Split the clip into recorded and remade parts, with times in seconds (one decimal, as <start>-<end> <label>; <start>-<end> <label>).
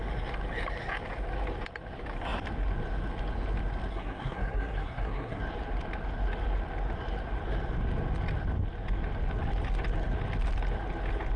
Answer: 0.0-3.9 recorded; 3.9-5.4 remade; 5.4-11.4 recorded